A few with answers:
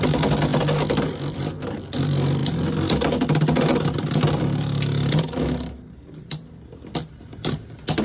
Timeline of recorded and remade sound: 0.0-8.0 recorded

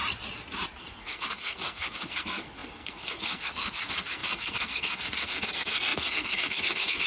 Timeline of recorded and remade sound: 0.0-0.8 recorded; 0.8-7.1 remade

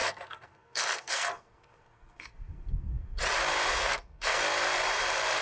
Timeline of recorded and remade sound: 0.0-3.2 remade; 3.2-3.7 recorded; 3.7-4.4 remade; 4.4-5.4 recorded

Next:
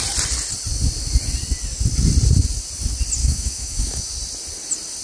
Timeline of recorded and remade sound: 0.0-3.2 recorded; 3.2-4.1 remade; 4.1-5.0 recorded

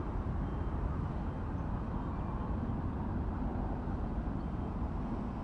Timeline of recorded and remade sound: 0.0-0.6 remade; 0.6-3.5 recorded; 3.5-4.9 remade; 4.9-5.4 recorded

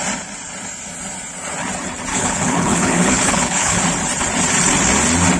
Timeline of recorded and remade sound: 0.0-2.1 recorded; 2.1-3.8 remade; 3.8-5.4 recorded